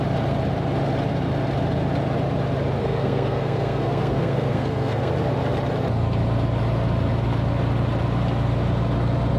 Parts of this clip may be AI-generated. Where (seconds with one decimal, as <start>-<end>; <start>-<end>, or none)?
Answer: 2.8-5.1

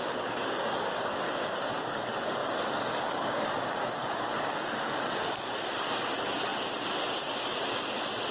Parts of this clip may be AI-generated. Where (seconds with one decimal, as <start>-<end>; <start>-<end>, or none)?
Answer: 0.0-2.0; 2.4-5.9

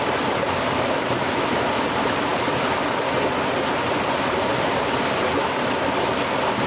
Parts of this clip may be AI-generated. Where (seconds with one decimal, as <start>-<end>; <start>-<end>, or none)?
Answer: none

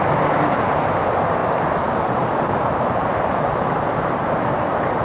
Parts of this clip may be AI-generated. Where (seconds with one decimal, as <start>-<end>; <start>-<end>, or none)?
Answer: 1.4-4.4

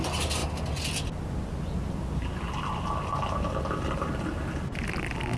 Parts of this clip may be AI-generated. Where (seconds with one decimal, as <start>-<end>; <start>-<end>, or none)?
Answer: none